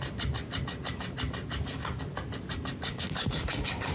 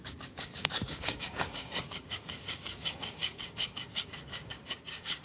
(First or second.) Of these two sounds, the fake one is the second